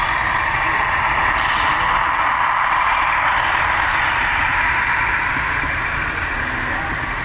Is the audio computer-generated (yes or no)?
no